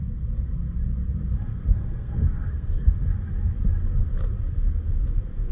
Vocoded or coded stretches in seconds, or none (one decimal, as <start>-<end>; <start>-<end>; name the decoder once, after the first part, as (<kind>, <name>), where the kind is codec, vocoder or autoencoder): 1.5-3.1 (codec, SNAC)